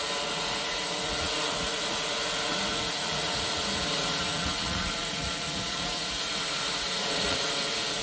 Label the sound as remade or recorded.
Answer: remade